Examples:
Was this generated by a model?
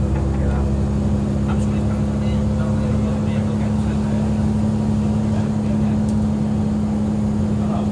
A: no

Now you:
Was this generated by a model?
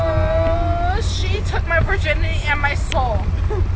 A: no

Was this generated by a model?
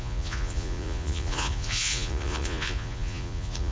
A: yes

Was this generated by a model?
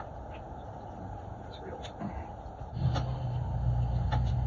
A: no